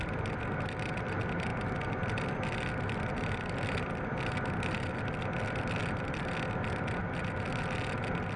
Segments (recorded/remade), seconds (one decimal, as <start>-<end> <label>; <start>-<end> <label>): 0.0-8.4 recorded